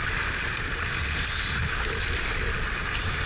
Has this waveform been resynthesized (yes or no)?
no